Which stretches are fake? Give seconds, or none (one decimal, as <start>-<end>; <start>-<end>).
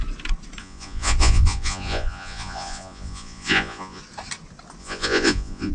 0.6-4.0; 4.8-5.7